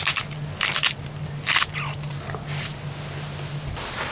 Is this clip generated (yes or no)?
no